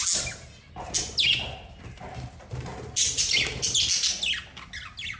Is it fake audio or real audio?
real